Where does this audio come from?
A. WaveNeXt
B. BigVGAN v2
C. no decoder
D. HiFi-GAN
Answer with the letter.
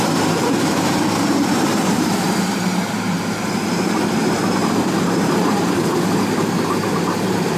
B